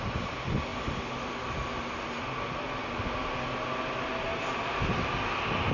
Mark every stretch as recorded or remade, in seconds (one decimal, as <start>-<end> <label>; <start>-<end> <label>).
0.0-5.7 recorded